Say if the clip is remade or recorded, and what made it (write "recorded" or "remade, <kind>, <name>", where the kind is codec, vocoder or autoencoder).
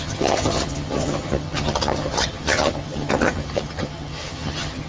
remade, vocoder, HiFi-GAN